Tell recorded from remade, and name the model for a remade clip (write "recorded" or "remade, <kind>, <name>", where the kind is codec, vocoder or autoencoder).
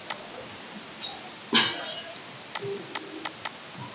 recorded